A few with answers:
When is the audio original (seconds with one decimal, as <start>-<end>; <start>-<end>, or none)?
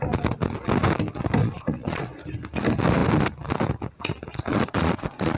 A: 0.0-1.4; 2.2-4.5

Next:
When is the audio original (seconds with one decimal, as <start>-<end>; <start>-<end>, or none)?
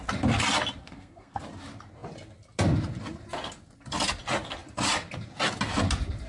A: 0.0-0.8; 1.4-6.3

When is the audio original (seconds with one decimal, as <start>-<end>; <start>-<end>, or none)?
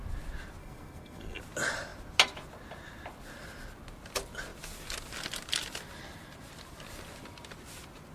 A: 0.0-0.6; 1.4-8.1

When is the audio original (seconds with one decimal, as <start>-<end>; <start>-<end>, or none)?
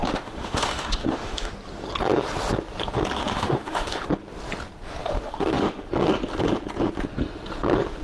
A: 1.5-3.2; 4.1-5.0; 5.9-8.0